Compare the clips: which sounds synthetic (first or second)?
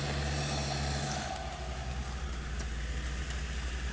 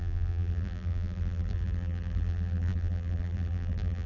second